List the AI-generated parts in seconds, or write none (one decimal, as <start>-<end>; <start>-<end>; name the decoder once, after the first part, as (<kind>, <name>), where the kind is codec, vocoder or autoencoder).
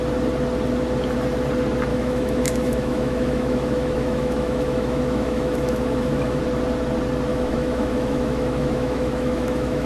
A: 1.9-6.4 (autoencoder, DAC-VAE); 7.3-9.9